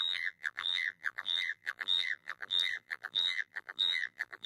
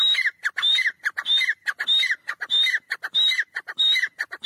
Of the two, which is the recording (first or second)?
second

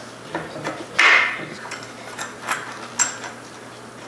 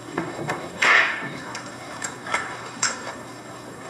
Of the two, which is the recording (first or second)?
first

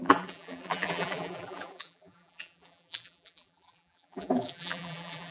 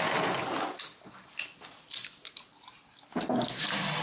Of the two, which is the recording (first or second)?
second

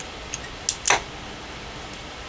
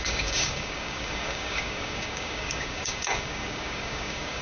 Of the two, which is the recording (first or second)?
first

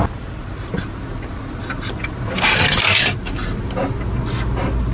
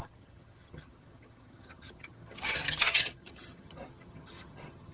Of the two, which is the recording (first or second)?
first